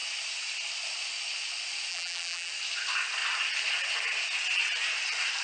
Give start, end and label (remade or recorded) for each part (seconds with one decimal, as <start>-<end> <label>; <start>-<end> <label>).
0.0-1.9 recorded; 1.9-2.5 remade; 2.5-5.4 recorded